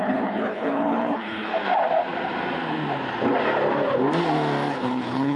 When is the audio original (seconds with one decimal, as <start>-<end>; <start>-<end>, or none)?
1.5-4.7